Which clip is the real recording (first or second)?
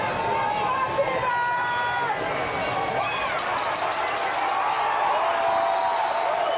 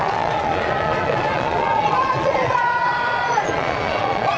first